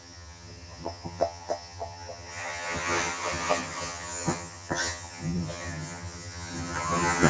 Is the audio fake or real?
fake